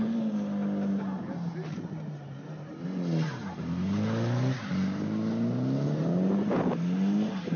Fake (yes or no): no